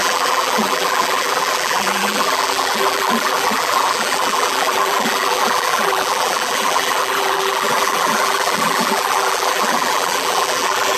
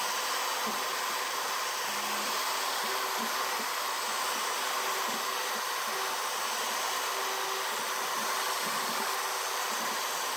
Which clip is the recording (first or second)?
second